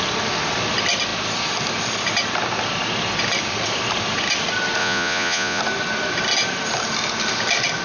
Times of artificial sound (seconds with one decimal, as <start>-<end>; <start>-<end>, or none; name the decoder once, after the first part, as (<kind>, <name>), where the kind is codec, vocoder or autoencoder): 4.8-5.6 (vocoder, Vocos)